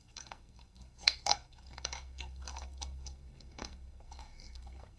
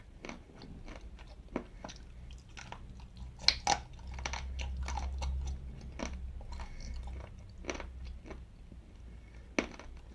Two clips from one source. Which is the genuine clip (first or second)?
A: second